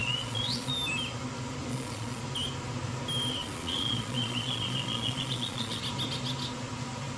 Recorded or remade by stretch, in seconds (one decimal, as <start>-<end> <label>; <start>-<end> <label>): 0.0-0.7 remade; 0.7-1.7 recorded; 1.7-2.2 remade; 2.2-3.4 recorded; 3.4-5.8 remade; 5.8-7.2 recorded

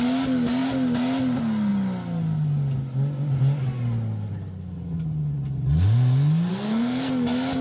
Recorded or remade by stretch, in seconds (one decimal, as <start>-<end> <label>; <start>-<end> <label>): 0.0-6.5 recorded; 6.5-7.1 remade; 7.1-7.6 recorded

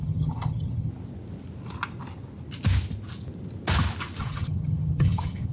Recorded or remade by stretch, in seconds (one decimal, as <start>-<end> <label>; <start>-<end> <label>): 0.0-0.9 remade; 0.9-4.2 recorded; 4.2-5.5 remade

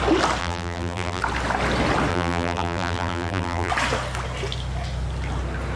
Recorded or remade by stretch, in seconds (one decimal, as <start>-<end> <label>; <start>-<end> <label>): 0.0-0.4 recorded; 0.4-1.2 remade; 1.2-2.1 recorded; 2.1-3.7 remade; 3.7-5.8 recorded

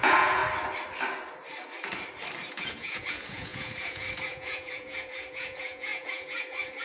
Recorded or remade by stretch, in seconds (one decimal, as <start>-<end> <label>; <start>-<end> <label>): 0.0-0.4 remade; 0.4-2.5 recorded; 2.5-6.8 remade

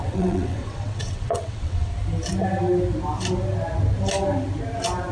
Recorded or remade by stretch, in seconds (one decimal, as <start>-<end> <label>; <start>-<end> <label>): 0.0-1.9 remade; 1.9-5.1 recorded

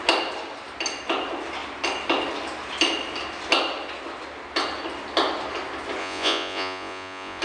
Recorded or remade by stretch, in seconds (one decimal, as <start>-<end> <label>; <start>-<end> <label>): 0.0-6.0 recorded; 6.0-7.4 remade

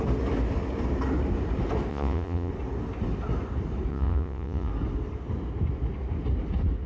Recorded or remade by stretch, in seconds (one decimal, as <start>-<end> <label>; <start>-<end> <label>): 0.0-1.9 recorded; 1.9-2.5 remade; 2.5-3.9 recorded; 3.9-4.7 remade; 4.7-6.9 recorded